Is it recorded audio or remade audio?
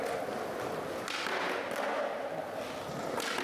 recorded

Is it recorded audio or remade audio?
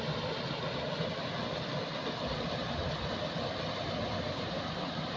recorded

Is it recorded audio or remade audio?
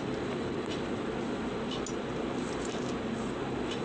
recorded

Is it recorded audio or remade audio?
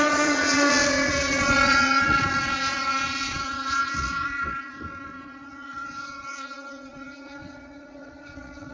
remade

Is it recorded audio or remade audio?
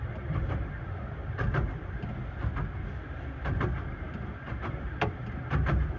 recorded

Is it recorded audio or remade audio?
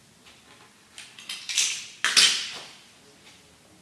recorded